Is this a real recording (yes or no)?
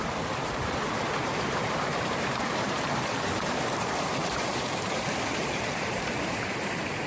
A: no